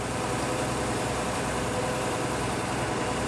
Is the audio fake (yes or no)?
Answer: yes